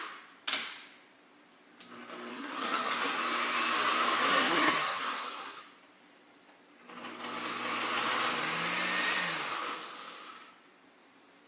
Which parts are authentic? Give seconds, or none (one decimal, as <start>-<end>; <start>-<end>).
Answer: 0.0-2.3; 3.2-4.3; 5.6-11.5